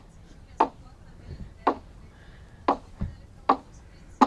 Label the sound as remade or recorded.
recorded